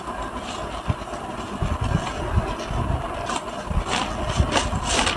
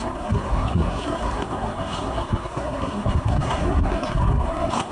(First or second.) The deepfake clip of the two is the second